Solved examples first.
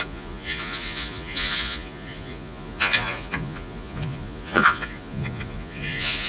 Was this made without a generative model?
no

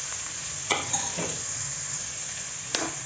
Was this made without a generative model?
no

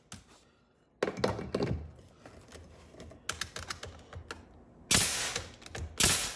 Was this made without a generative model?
yes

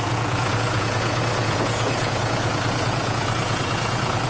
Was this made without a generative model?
no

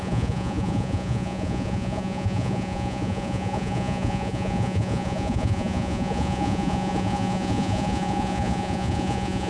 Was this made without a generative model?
no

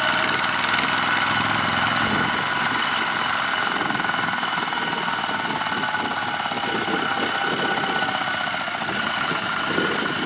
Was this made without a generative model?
yes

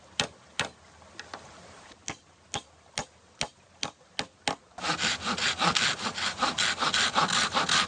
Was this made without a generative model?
yes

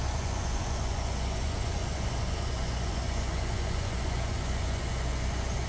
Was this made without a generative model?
no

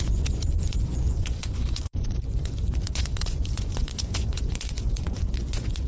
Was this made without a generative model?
no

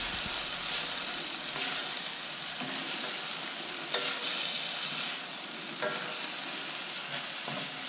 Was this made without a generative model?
yes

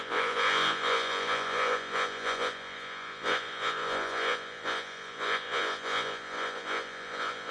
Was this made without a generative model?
no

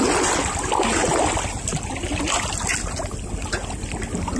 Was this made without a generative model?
yes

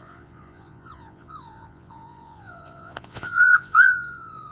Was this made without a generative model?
no